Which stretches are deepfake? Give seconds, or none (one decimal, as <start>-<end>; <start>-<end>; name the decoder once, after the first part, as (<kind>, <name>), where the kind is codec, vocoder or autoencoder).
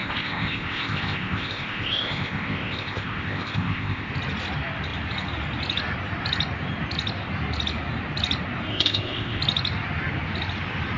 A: 0.0-4.1 (codec, ZipCodec); 8.7-9.4